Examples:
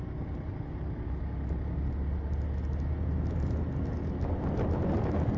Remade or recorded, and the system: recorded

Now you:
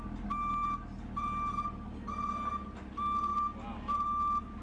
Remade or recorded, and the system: recorded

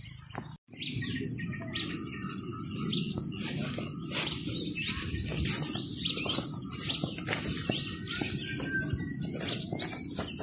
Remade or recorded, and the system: recorded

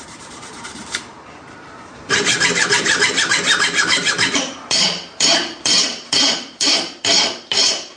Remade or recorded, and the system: remade, vocoder, BigVGAN v2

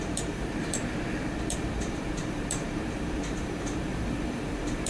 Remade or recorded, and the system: remade, vocoder, BigVGAN v2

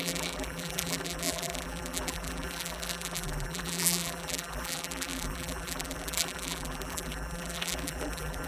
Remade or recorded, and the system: remade, vocoder, BigVGAN v2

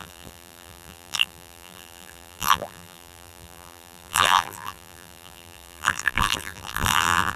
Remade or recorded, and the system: remade, vocoder, BigVGAN v2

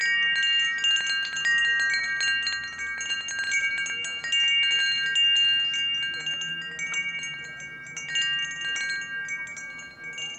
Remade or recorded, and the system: recorded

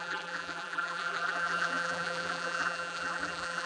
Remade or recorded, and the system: remade, vocoder, BigVGAN v2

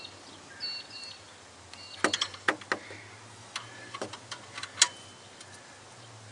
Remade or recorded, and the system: recorded